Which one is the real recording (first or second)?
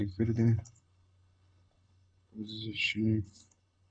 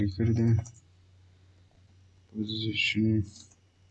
second